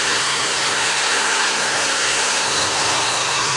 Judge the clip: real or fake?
fake